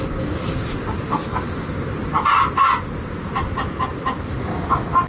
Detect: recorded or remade recorded